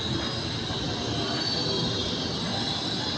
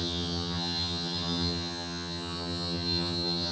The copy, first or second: second